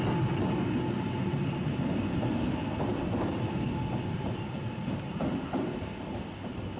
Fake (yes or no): no